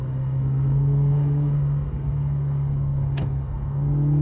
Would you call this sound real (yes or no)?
no